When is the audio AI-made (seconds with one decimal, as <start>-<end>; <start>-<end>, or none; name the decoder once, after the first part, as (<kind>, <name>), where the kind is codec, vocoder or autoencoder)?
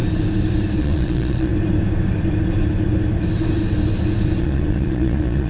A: 0.8-1.5 (vocoder, Vocos); 4.4-5.5